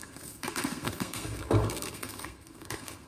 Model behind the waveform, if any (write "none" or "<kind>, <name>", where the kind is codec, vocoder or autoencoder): codec, SNAC